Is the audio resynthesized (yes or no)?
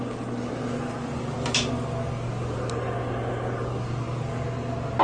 no